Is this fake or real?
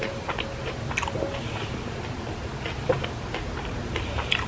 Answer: real